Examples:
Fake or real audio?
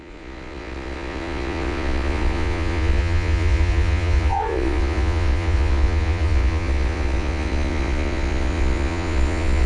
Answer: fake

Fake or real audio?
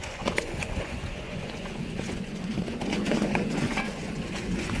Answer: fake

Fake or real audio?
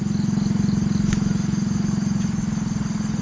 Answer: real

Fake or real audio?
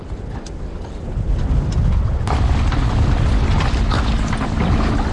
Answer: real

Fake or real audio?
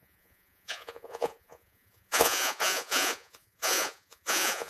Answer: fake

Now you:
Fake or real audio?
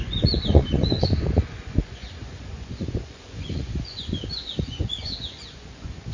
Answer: fake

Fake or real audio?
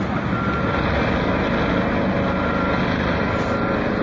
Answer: real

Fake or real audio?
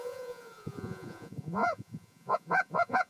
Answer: fake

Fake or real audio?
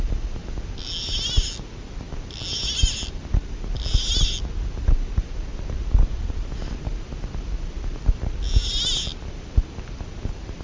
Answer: real